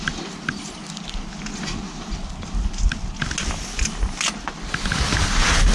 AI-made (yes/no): no